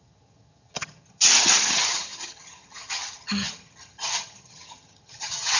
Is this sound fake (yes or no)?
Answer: yes